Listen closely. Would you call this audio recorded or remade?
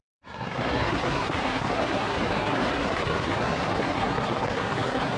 remade